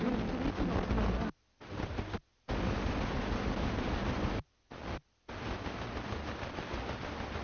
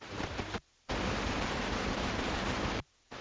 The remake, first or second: second